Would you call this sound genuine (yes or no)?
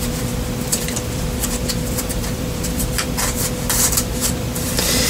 no